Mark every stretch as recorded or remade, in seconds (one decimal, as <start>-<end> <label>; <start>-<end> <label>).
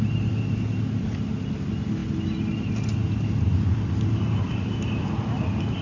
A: 0.0-5.8 recorded